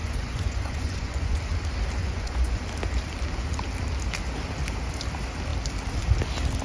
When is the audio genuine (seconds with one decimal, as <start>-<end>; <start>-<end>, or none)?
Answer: 1.4-2.0; 2.6-6.6